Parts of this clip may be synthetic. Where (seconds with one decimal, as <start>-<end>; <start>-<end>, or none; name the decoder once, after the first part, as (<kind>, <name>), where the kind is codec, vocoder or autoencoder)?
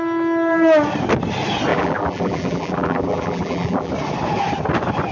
1.7-3.9 (vocoder, BigVGAN v2)